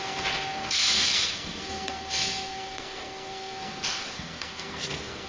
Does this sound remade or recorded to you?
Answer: remade